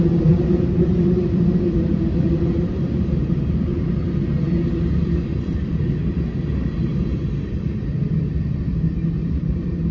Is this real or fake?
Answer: fake